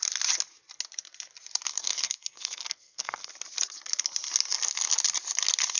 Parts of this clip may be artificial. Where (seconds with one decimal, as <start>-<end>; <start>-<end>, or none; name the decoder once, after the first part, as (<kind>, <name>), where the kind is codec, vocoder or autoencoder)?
1.7-3.3 (codec, SNAC)

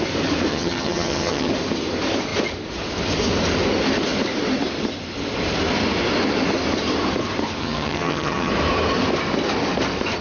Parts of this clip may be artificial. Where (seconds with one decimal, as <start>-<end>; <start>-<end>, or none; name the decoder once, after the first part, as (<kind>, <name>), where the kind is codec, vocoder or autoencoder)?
0.5-1.5 (vocoder, HiFi-GAN); 7.6-8.5

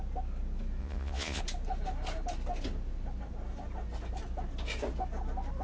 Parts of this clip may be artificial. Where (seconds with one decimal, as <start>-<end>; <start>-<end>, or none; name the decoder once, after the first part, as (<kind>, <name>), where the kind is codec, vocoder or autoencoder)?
0.8-1.4 (vocoder, Vocos)

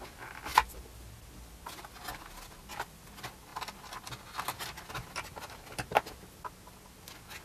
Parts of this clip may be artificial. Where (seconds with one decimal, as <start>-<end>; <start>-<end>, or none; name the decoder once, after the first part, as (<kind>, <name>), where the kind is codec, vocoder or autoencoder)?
none